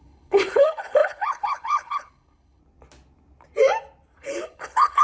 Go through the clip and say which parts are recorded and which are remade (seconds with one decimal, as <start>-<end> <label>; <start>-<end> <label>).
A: 0.0-2.6 remade; 2.6-4.2 recorded; 4.2-5.0 remade